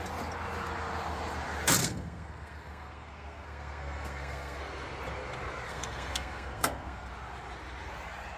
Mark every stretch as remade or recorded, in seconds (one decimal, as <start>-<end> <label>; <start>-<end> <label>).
0.0-1.8 recorded; 1.8-4.6 remade; 4.6-5.7 recorded; 5.7-7.1 remade; 7.1-8.4 recorded